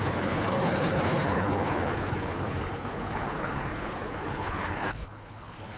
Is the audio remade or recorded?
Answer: remade